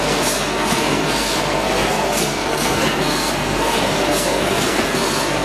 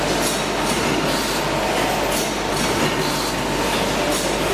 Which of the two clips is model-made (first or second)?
first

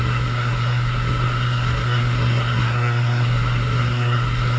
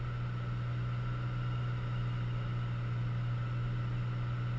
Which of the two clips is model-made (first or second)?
first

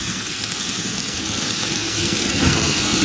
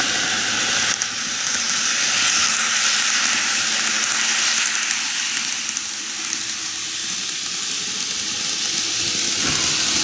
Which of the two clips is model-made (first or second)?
first